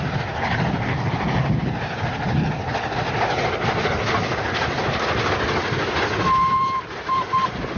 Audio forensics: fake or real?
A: real